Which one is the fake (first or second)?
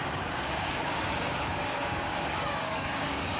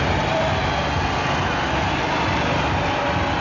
first